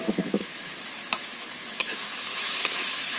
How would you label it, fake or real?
fake